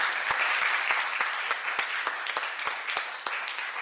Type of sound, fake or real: real